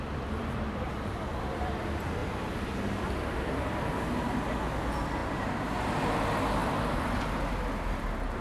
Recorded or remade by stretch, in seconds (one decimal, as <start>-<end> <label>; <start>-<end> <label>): 0.0-0.4 recorded; 0.4-1.7 remade; 1.7-2.2 recorded; 2.2-4.5 remade; 4.5-6.6 recorded; 6.6-7.2 remade; 7.2-8.4 recorded